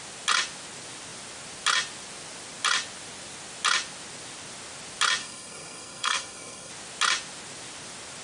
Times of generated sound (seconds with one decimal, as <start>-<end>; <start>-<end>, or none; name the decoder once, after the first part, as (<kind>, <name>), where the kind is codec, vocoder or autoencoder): 5.2-6.7 (codec, SNAC)